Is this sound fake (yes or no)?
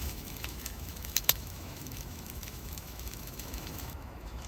yes